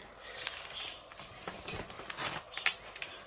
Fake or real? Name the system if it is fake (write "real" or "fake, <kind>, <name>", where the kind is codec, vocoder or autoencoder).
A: real